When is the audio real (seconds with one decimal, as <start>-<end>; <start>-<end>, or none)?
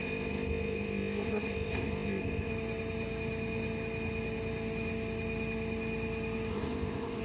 2.5-6.5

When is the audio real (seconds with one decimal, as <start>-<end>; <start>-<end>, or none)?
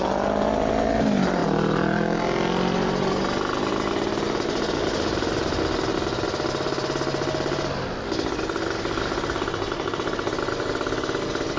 0.0-11.6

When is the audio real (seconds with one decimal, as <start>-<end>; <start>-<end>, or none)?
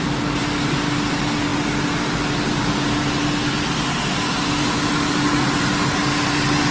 0.0-6.7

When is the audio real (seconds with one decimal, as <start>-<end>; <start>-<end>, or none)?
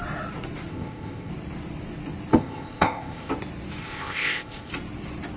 0.0-0.7; 1.3-2.3; 3.3-3.8; 4.7-5.4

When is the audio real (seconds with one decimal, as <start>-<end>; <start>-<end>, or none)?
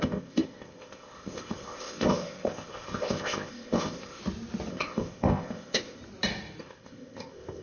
4.2-4.7; 6.0-6.6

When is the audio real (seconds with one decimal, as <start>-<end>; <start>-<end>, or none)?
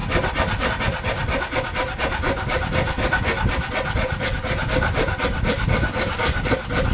0.0-6.9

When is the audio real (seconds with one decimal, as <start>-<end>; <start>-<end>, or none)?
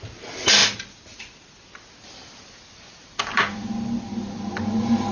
0.0-5.1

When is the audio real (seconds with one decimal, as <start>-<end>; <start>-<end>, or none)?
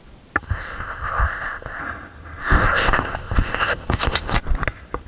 0.0-0.4; 1.8-2.4; 4.4-5.1